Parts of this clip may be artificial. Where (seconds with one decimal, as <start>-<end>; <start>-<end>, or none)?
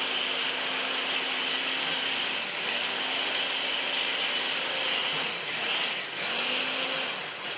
5.0-5.7